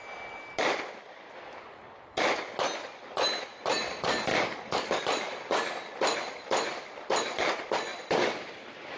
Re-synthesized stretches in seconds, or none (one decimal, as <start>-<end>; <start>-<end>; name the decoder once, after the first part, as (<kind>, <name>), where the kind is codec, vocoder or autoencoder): 4.3-5.0 (codec, DAC)